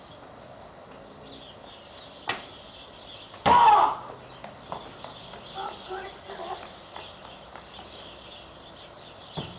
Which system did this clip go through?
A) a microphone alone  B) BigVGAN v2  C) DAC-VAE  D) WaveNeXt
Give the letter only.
A